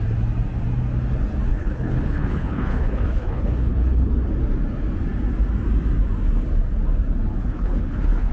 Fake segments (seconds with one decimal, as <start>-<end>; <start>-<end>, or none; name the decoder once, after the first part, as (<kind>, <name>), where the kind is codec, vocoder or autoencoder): 1.5-4.1 (codec, HILCodec); 7.4-8.3